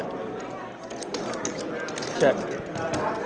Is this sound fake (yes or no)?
no